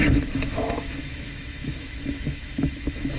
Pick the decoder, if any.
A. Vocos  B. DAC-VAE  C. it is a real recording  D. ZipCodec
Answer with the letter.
B